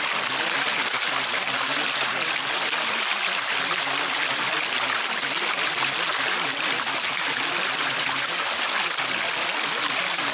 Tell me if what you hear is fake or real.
real